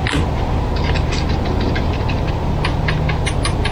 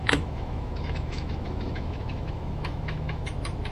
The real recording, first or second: first